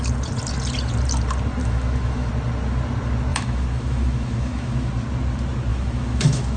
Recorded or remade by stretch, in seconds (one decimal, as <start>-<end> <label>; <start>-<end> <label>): 0.0-1.6 recorded; 1.6-2.3 remade; 2.3-3.3 recorded; 3.3-4.9 remade; 4.9-5.7 recorded; 5.7-6.6 remade